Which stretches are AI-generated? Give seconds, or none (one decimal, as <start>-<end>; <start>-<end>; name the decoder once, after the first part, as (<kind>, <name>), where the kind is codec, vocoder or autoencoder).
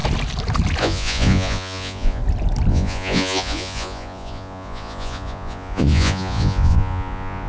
0.8-2.2 (vocoder, Vocos); 2.7-7.5